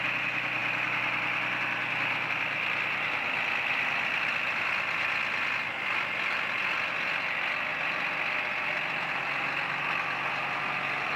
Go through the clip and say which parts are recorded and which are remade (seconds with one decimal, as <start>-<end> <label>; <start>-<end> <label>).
0.0-11.2 recorded